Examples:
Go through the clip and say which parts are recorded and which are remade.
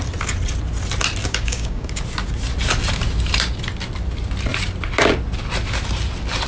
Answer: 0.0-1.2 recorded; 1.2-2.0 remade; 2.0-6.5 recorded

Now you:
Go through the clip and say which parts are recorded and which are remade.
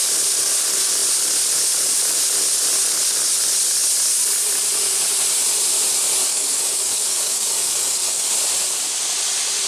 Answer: 0.0-6.3 recorded; 6.3-8.3 remade; 8.3-9.7 recorded